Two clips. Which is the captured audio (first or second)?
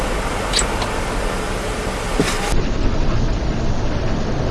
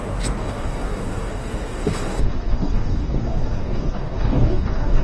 first